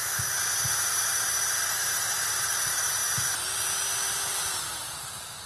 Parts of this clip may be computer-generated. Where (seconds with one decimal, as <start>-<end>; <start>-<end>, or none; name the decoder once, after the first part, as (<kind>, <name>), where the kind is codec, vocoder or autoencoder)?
0.9-3.0 (vocoder, BigVGAN v2); 4.5-5.5